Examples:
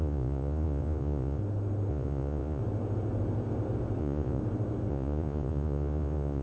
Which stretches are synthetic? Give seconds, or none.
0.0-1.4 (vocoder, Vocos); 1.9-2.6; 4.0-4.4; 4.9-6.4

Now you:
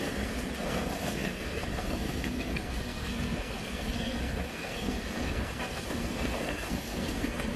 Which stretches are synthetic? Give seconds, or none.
0.0-7.6 (codec, SNAC)

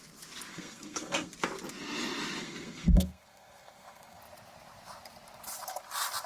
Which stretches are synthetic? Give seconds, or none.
0.5-1.3 (codec, SNAC); 2.4-4.2

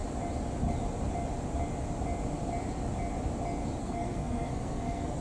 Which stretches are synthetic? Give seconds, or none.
3.8-5.2 (codec, SNAC)

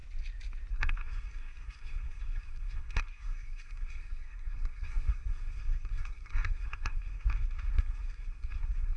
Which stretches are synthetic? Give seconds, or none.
0.7-9.0 (codec, SNAC)

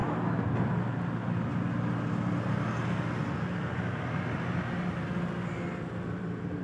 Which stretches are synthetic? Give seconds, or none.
none